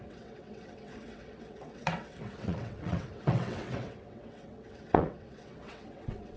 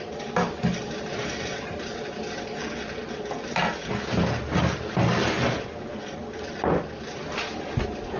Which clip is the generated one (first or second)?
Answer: first